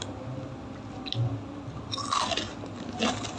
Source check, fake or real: real